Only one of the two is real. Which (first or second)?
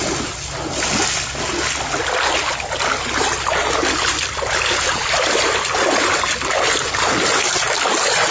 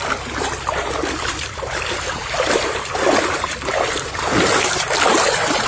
first